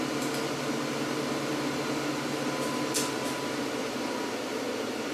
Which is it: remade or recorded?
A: recorded